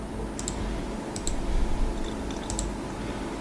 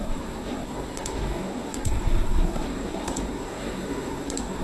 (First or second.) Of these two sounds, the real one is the first